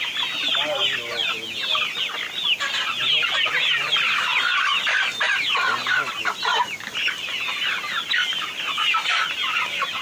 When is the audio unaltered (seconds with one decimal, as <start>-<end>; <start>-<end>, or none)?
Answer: 0.0-10.0